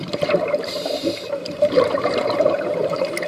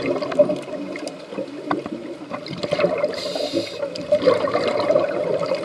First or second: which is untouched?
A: second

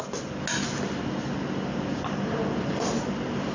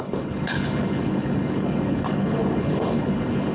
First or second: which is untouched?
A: first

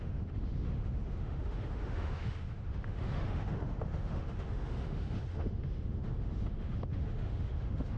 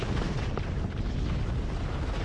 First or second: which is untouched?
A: second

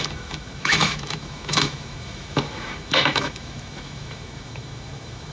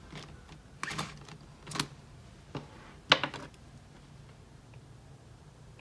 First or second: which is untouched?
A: second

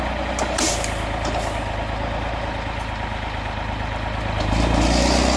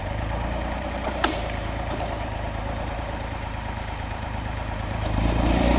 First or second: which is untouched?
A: first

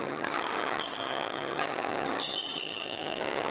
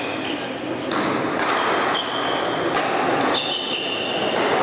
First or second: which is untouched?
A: second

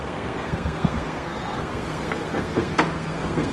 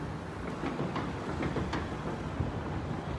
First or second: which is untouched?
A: second